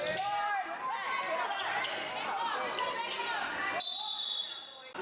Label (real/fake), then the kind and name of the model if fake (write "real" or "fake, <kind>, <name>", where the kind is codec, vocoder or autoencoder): real